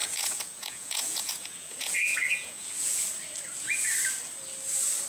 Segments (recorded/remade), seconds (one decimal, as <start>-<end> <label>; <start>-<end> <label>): 0.0-3.1 remade; 3.1-5.1 recorded